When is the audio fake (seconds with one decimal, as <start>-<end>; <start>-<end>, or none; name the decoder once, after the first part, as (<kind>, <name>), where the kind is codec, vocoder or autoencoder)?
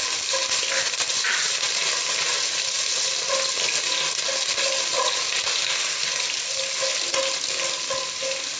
none